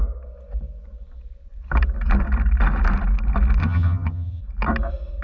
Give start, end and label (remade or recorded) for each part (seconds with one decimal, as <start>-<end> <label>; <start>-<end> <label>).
0.0-3.6 recorded; 3.6-4.4 remade; 4.4-5.2 recorded